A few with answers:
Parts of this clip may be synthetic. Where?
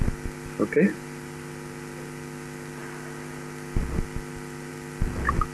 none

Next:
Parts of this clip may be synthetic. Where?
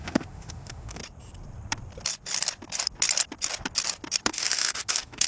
0.0-1.0 (autoencoder, DAC-VAE); 4.2-5.3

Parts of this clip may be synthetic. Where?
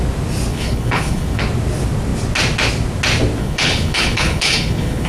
0.5-1.4 (codec, HILCodec); 3.4-5.1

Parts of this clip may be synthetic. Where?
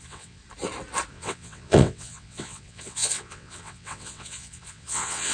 0.0-0.4 (vocoder, WaveNeXt); 1.1-5.3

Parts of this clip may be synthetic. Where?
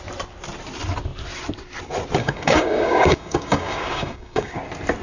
2.2-4.6 (codec, DAC)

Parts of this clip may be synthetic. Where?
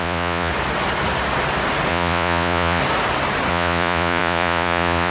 0.0-0.5 (vocoder, Vocos); 1.9-2.8; 3.5-5.1